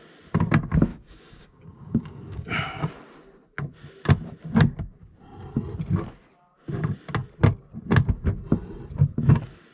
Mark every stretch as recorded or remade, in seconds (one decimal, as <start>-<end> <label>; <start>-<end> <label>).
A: 0.0-0.9 recorded; 0.9-2.9 remade; 2.9-9.7 recorded